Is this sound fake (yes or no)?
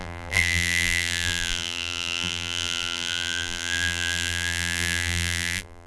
yes